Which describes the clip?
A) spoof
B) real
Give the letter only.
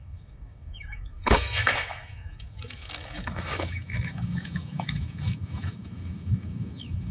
A